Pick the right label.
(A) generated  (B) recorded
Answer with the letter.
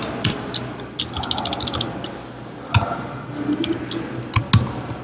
B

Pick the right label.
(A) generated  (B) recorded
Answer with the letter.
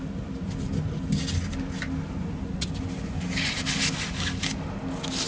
B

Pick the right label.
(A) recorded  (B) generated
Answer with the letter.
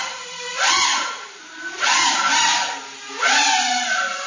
A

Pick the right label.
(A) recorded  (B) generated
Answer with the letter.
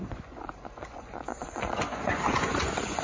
B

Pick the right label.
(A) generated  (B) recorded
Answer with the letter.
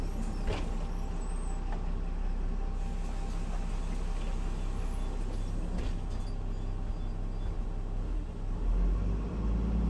B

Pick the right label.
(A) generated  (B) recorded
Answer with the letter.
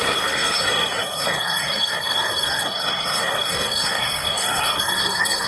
A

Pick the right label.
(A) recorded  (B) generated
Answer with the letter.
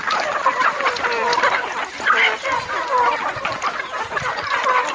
B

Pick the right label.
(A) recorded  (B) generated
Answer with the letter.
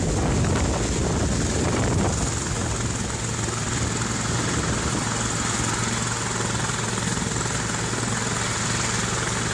A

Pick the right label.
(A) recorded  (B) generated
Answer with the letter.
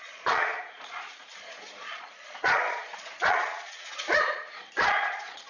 B